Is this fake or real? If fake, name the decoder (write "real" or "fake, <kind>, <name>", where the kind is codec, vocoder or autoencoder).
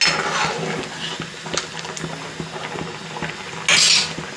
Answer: real